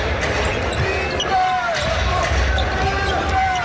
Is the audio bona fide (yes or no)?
yes